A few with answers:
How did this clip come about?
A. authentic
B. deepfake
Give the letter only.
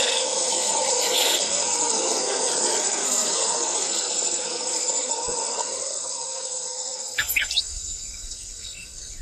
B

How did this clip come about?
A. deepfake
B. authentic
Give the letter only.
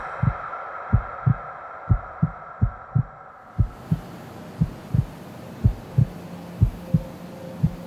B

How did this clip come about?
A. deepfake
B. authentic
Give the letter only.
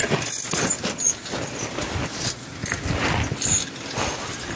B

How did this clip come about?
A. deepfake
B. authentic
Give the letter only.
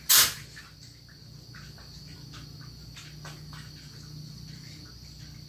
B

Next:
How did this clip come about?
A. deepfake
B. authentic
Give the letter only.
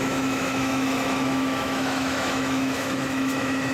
A